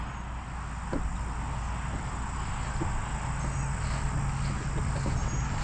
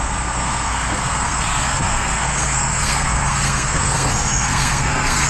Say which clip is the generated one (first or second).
second